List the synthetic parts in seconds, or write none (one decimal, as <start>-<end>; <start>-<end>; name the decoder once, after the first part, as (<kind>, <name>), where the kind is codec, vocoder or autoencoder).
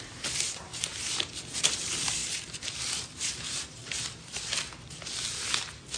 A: 0.0-0.9 (vocoder, BigVGAN v2); 1.6-2.2; 2.8-3.8